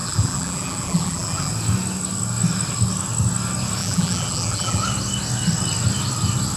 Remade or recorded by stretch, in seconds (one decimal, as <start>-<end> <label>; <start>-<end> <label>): 0.0-1.5 remade; 1.5-3.8 recorded; 3.8-4.8 remade; 4.8-6.6 recorded